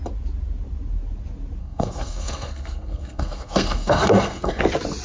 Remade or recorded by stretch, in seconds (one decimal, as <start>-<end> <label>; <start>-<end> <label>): 0.0-1.6 recorded; 1.6-4.6 remade; 4.6-5.0 recorded